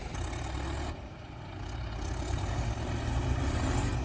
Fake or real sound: real